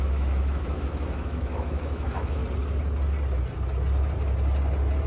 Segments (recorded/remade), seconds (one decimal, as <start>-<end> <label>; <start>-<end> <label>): 0.0-2.4 remade; 2.4-5.1 recorded